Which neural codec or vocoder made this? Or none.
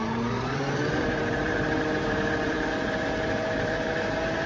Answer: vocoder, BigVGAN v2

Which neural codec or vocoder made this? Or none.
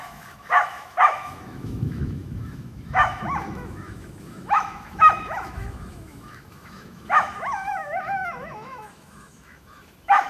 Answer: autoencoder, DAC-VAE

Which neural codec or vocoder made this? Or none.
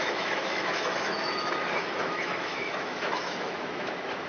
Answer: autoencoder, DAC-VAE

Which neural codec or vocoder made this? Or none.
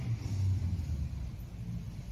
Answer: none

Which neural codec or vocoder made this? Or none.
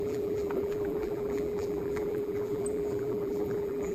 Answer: vocoder, BigVGAN v2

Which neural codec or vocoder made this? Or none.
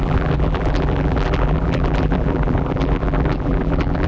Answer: vocoder, BigVGAN v2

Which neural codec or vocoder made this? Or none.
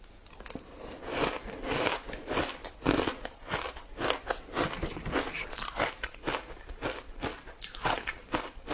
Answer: none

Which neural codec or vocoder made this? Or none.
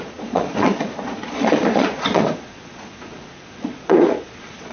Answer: vocoder, Vocos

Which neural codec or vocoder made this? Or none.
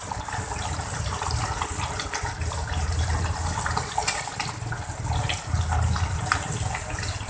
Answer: none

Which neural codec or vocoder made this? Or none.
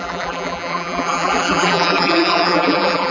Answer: vocoder, BigVGAN v2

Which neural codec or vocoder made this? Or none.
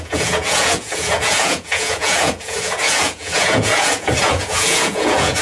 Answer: vocoder, Vocos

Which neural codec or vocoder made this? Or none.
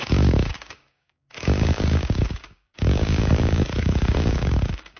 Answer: codec, DAC